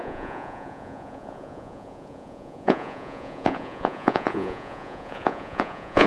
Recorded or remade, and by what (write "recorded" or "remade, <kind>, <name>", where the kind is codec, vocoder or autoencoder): remade, vocoder, Vocos